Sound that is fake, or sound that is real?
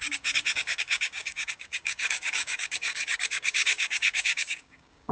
fake